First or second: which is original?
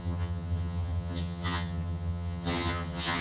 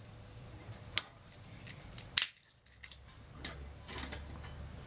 second